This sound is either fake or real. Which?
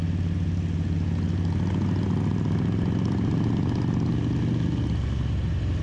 real